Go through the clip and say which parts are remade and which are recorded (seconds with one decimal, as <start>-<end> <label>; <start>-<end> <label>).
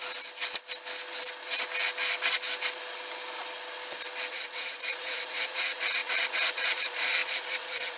0.0-4.3 recorded; 4.3-8.0 remade